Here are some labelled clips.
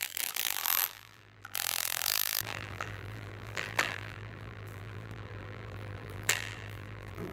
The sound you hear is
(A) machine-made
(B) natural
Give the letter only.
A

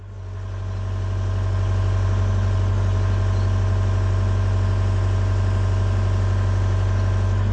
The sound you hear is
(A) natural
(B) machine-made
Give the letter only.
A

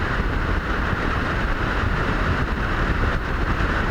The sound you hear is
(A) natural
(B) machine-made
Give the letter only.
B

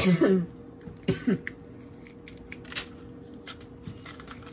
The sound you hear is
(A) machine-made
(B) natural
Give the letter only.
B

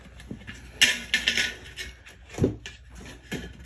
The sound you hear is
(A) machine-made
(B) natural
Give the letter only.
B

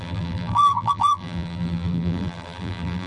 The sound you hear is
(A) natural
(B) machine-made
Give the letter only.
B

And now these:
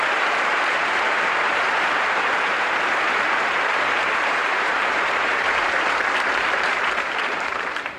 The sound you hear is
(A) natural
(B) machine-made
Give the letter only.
B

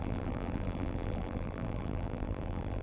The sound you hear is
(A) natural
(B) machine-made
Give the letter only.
B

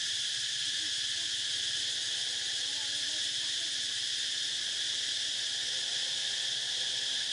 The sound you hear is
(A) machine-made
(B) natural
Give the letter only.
A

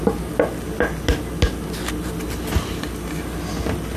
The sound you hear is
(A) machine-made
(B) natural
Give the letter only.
B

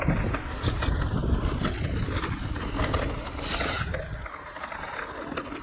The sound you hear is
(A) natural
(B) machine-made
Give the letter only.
A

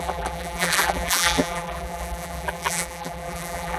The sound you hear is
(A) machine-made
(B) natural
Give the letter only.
A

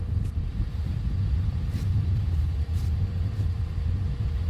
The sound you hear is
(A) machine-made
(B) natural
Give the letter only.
A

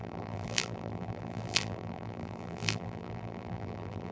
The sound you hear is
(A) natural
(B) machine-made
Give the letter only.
B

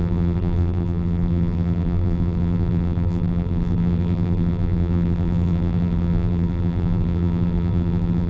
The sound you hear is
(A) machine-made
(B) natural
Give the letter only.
A